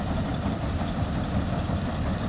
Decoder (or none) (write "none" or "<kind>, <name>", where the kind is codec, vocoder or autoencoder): vocoder, BigVGAN v2